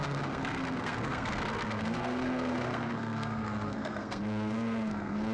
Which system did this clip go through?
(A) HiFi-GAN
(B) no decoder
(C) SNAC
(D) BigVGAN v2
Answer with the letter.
C